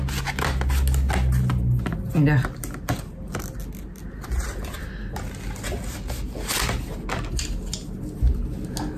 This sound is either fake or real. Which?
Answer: real